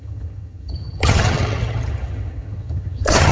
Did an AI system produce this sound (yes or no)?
yes